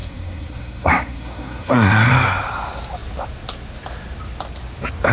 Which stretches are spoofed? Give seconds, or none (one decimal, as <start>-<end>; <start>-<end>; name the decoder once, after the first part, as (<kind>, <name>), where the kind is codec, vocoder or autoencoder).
0.0-2.1 (codec, SNAC)